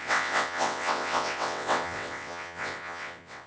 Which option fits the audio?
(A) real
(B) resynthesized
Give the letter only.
B